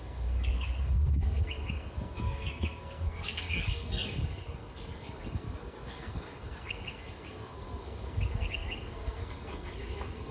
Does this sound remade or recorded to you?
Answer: remade